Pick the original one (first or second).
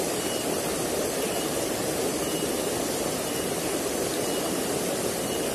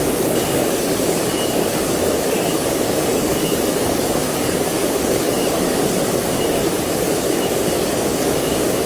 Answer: first